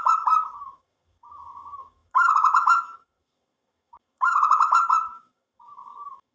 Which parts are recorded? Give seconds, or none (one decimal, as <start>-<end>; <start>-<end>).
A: none